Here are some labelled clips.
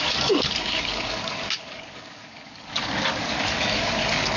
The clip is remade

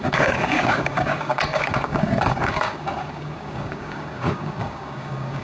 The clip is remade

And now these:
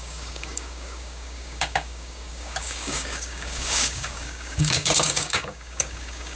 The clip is remade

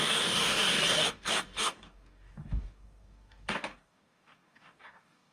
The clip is remade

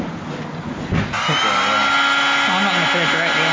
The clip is recorded